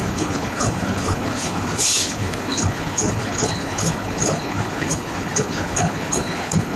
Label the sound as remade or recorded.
remade